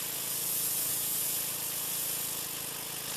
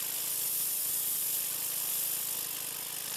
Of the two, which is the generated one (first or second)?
first